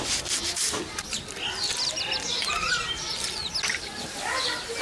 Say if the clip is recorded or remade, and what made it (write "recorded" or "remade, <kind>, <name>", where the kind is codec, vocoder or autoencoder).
recorded